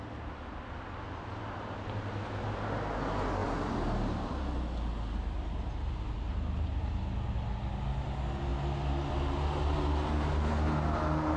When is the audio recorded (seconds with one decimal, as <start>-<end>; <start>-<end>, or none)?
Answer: 0.0-11.4